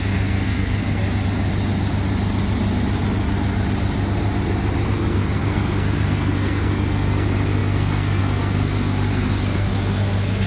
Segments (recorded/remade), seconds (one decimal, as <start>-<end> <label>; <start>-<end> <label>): 0.0-1.0 remade; 1.0-4.9 recorded; 4.9-10.5 remade